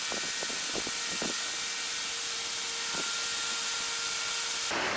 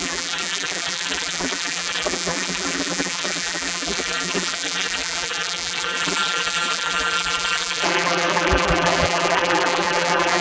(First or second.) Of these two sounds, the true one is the first